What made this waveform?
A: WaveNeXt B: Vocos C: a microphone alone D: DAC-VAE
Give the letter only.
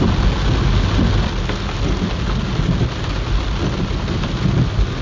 C